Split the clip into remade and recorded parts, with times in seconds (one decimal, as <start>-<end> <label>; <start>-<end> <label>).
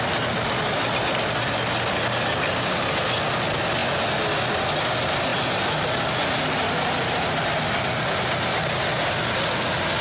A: 0.0-10.0 recorded